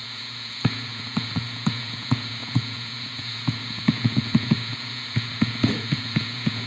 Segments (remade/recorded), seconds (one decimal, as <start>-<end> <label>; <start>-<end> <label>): 0.0-6.7 remade